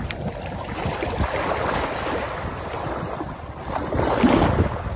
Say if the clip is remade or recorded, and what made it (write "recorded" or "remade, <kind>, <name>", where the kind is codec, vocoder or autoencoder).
recorded